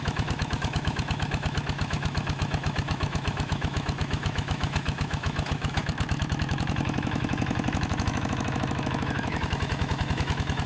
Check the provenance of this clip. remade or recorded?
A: remade